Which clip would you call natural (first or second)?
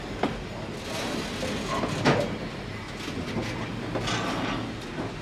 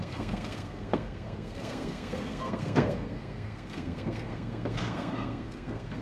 first